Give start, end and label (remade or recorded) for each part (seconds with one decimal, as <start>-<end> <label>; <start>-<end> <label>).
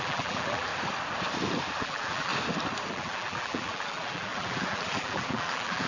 0.0-0.7 remade; 0.7-1.8 recorded; 1.8-2.3 remade; 2.3-2.9 recorded; 2.9-5.9 remade